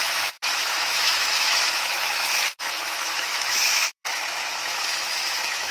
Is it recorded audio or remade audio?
remade